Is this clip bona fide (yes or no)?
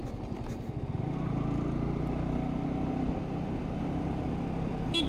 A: yes